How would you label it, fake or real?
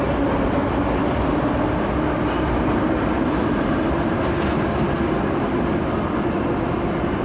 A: real